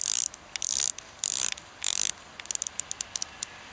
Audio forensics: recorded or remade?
recorded